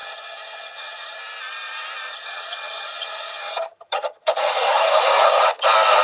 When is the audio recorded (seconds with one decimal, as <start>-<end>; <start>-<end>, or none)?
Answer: 1.2-2.1; 5.4-6.0